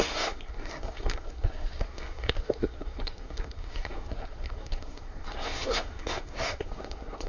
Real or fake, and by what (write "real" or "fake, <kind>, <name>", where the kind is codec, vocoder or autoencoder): fake, codec, SNAC